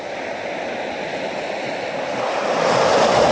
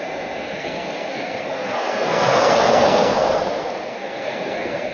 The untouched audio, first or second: first